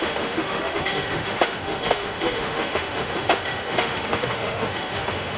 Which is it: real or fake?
fake